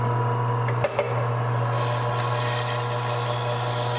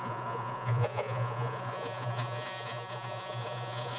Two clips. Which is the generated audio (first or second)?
second